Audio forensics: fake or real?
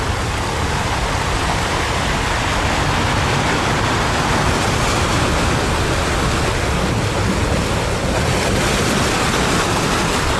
real